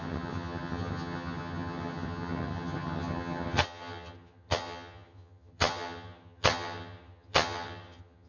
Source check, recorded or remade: remade